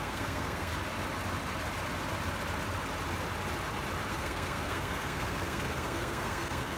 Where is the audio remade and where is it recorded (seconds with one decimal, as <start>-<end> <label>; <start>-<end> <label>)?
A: 0.0-0.7 remade; 0.7-4.1 recorded; 4.1-6.8 remade